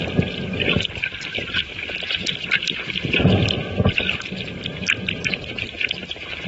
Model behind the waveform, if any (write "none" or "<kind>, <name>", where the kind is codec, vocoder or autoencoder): none